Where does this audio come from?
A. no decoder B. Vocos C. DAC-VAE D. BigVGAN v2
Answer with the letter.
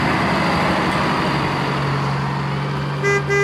A